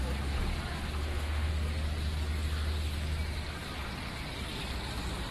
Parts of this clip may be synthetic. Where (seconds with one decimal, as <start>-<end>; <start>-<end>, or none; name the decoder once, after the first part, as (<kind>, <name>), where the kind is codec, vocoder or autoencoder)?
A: 1.0-1.5 (autoencoder, DAC-VAE)